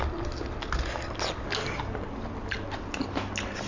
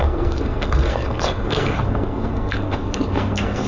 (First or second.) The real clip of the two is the first